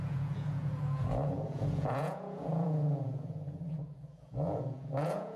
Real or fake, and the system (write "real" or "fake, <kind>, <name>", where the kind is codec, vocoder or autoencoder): fake, vocoder, Vocos